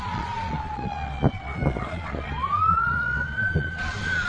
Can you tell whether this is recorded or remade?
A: remade